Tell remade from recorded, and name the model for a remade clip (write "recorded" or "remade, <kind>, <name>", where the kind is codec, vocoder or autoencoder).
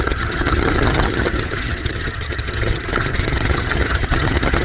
remade, vocoder, HiFi-GAN